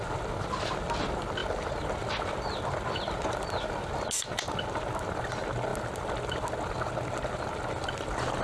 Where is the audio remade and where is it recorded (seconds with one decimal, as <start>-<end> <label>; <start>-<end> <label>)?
0.0-8.4 recorded